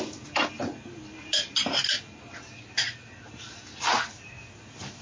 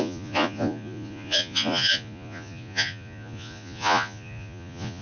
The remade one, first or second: second